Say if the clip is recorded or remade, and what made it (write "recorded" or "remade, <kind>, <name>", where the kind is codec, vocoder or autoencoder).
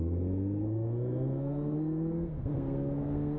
remade, codec, SNAC